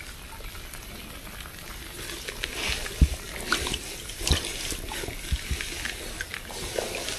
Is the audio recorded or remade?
recorded